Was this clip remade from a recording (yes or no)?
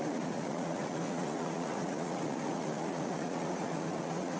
yes